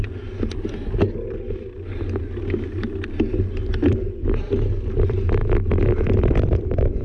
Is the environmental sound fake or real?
real